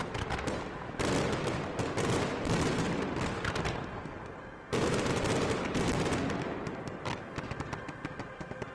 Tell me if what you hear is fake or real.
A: real